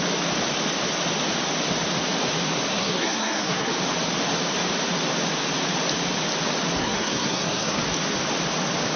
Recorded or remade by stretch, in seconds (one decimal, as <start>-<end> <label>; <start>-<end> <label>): 0.0-2.7 recorded; 2.7-3.7 remade; 3.7-6.8 recorded; 6.8-7.8 remade; 7.8-9.0 recorded